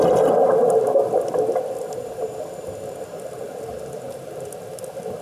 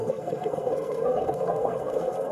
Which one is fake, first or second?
second